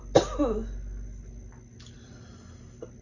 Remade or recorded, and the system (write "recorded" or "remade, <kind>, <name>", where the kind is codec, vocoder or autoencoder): recorded